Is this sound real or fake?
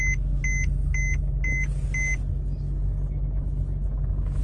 real